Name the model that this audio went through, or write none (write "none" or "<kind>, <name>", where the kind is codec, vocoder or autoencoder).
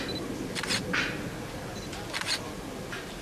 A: none